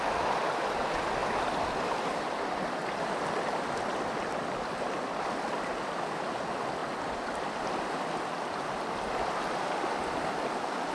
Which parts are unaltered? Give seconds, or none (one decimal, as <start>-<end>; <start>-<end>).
0.0-10.9